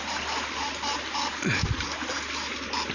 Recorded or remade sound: recorded